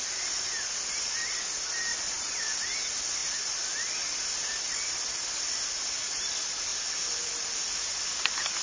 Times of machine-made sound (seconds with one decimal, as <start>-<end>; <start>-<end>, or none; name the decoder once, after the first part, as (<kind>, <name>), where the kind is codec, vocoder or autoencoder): 1.9-2.4 (vocoder, Vocos)